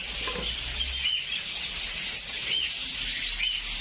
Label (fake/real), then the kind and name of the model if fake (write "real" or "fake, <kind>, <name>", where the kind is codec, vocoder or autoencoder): real